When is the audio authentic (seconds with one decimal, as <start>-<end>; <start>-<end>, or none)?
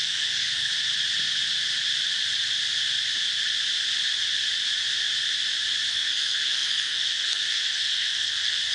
0.7-5.9